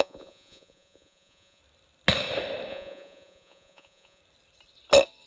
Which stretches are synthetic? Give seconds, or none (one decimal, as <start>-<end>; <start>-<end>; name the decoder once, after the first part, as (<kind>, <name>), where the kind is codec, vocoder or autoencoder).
0.0-1.6 (vocoder, Vocos); 2.7-4.2